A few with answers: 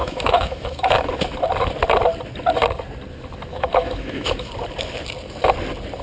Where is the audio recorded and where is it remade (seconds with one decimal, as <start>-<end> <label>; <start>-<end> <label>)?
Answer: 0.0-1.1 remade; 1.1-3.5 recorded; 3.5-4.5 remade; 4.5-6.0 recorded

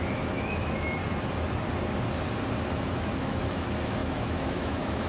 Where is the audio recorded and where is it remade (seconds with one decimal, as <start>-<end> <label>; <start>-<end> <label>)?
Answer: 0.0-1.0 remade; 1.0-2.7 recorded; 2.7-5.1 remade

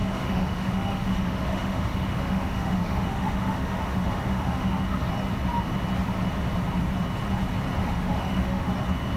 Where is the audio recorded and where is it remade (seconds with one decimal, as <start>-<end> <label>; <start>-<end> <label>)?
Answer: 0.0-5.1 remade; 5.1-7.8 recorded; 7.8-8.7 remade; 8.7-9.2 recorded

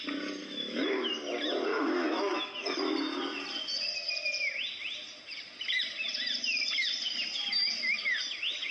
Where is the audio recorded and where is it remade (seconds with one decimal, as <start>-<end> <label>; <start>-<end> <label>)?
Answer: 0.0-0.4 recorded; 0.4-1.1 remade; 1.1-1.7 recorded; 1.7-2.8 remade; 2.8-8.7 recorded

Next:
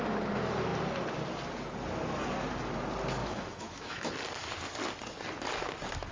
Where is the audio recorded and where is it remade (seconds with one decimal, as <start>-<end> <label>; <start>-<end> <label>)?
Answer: 0.0-3.2 recorded; 3.2-4.1 remade; 4.1-6.1 recorded

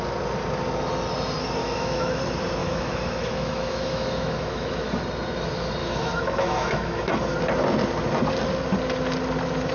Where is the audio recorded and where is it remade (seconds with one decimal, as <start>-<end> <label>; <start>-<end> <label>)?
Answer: 0.0-1.6 recorded; 1.6-2.2 remade; 2.2-2.6 recorded; 2.6-5.0 remade; 5.0-5.8 recorded; 5.8-7.1 remade; 7.1-9.7 recorded